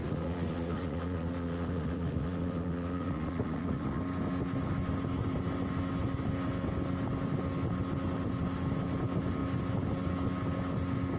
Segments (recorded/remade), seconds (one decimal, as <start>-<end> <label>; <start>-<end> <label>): 0.0-4.0 remade; 4.0-11.2 recorded